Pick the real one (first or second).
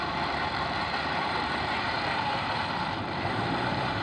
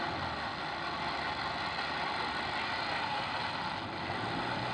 second